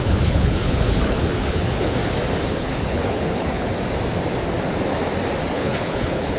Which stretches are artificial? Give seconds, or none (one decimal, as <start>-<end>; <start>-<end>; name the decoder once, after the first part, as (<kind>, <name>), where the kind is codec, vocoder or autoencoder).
0.0-2.0 (codec, HILCodec); 2.5-3.7; 5.5-6.4